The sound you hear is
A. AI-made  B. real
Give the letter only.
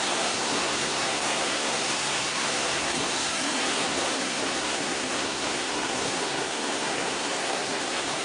A